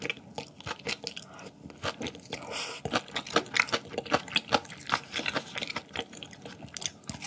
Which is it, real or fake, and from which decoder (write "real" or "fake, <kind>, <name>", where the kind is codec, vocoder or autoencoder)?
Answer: real